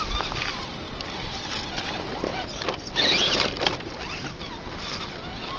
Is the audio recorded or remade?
recorded